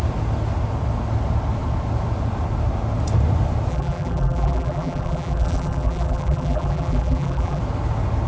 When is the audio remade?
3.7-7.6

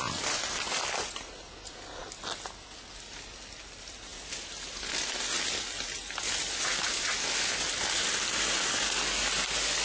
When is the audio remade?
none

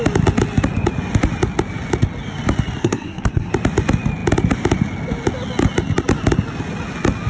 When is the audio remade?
2.8-3.5